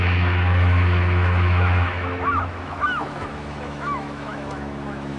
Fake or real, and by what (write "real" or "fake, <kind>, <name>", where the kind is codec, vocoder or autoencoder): fake, autoencoder, DAC-VAE